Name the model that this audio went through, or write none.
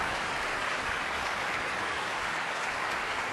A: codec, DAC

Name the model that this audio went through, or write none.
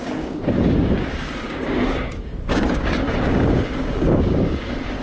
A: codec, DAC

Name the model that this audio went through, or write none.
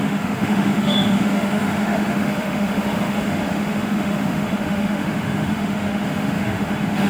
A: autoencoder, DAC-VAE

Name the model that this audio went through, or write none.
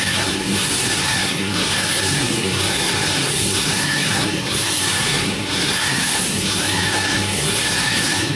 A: codec, SNAC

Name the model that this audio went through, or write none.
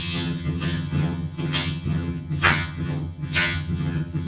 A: vocoder, HiFi-GAN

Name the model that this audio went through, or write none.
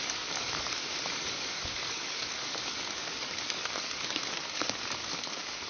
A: codec, DAC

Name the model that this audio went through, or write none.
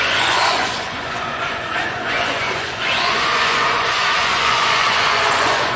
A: vocoder, Vocos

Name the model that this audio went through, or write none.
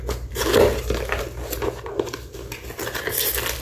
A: none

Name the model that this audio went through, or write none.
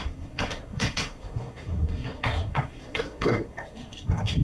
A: codec, SNAC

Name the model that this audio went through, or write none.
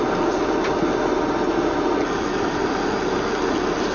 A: none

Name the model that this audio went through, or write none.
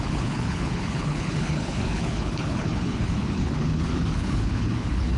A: codec, HILCodec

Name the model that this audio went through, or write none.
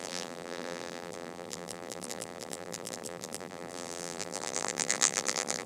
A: vocoder, BigVGAN v2